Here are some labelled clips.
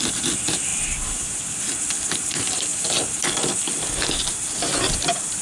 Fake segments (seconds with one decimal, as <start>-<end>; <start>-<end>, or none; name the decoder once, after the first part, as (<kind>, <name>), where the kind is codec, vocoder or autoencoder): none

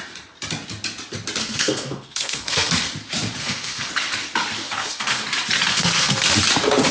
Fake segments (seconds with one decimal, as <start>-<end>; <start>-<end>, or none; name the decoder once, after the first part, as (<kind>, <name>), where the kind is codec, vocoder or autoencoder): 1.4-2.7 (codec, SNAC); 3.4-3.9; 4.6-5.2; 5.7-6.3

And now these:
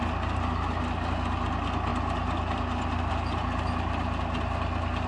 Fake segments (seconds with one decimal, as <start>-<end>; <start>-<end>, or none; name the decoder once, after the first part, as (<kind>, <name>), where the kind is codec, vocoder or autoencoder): none

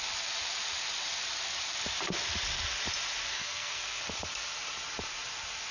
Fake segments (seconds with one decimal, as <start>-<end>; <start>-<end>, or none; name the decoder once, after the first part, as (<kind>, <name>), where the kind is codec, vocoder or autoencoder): 3.3-4.0 (codec, SNAC)